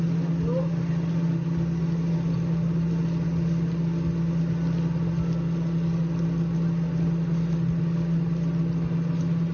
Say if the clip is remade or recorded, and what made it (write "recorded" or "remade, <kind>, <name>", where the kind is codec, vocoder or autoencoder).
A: recorded